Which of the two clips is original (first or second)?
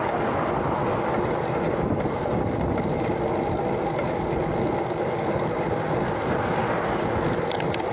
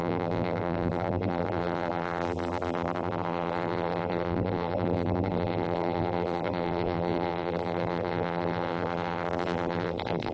first